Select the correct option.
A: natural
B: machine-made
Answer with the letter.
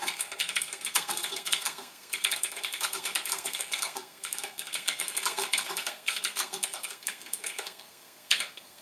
B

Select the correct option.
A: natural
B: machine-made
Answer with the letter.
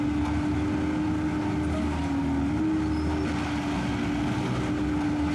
A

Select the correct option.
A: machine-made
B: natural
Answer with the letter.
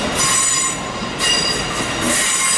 B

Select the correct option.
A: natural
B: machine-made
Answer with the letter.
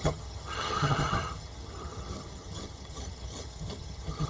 B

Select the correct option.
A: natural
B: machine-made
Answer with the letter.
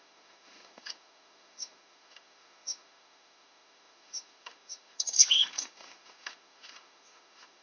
B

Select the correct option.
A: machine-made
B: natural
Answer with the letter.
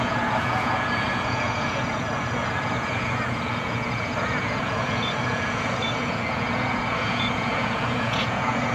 A